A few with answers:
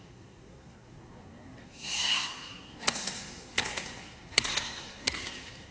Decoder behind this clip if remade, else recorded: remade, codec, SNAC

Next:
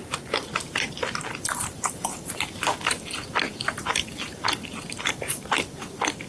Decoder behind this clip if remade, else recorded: remade, vocoder, BigVGAN v2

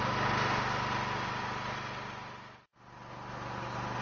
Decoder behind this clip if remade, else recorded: recorded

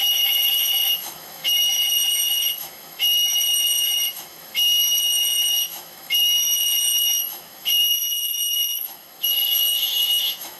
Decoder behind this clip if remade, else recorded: remade, autoencoder, DAC-VAE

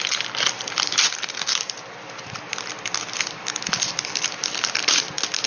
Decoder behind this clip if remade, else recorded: recorded